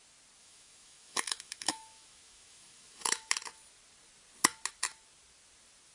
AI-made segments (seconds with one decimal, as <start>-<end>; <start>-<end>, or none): 0.4-3.3